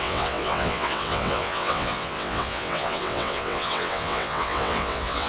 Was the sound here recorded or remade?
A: remade